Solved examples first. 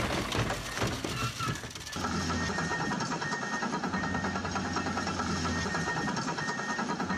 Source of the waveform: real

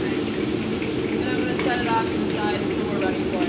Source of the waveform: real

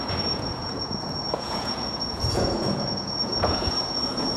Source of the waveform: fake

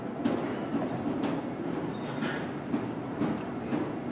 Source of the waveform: real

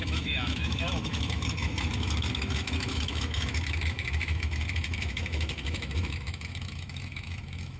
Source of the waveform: fake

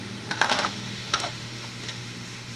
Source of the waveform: fake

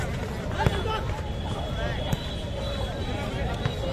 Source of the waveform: real